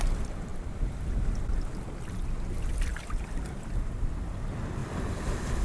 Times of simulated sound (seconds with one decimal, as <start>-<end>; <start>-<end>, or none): 2.9-4.3; 4.8-5.6